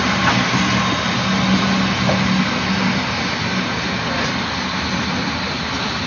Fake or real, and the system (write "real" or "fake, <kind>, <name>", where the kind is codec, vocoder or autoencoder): real